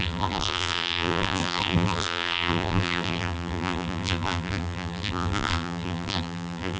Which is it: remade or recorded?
remade